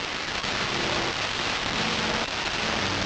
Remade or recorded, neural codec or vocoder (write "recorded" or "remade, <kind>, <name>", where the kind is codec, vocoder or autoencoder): recorded